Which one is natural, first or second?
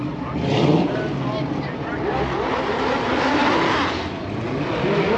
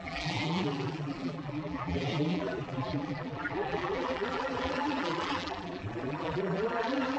first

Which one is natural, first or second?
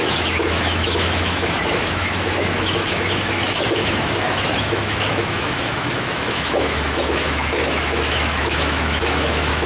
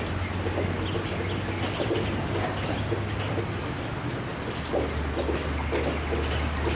second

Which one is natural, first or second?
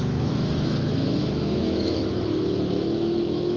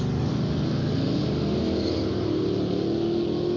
second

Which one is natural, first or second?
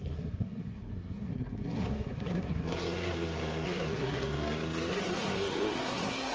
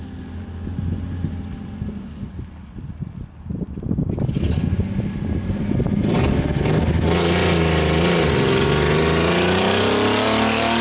second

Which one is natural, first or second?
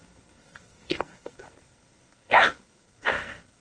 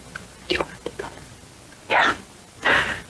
second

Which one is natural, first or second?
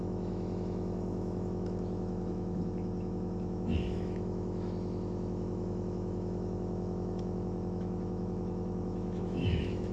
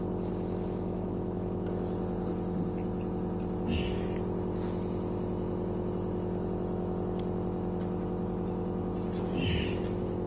second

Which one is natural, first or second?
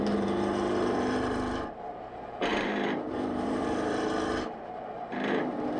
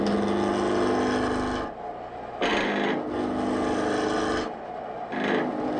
second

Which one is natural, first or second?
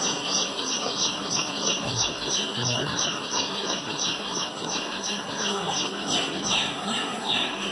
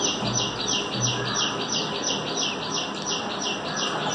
second